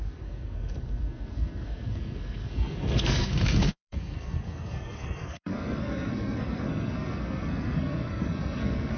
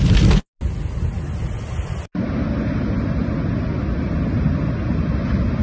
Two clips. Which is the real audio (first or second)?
second